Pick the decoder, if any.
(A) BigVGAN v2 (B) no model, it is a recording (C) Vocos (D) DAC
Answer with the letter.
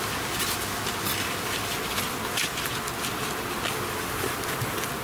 B